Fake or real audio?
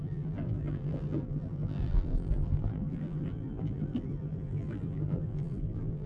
fake